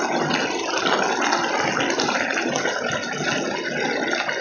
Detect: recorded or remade recorded